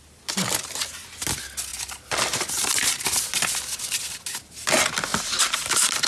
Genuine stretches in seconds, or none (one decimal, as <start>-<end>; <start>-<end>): 0.0-1.7; 3.1-5.1